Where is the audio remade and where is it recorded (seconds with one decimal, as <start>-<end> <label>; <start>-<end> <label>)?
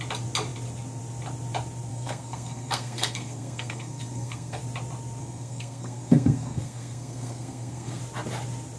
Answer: 0.0-1.9 recorded; 1.9-4.6 remade; 4.6-5.2 recorded; 5.2-8.0 remade; 8.0-8.8 recorded